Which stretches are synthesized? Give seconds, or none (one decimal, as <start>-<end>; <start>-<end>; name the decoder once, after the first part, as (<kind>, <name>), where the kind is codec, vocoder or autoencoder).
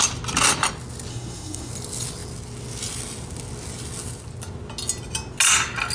1.1-1.7 (codec, SNAC)